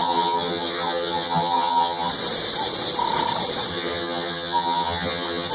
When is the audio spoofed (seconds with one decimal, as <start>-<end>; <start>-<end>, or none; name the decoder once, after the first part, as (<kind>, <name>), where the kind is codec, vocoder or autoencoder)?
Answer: 0.0-2.1 (vocoder, HiFi-GAN); 3.7-5.5